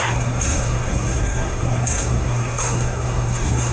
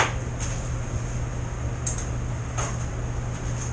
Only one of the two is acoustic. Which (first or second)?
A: second